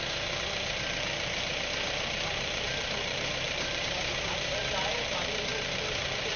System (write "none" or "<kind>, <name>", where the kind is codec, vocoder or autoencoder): vocoder, BigVGAN v2